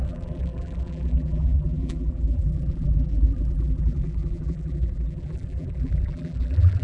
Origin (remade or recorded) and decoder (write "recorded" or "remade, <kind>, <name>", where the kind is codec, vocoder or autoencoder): remade, vocoder, BigVGAN v2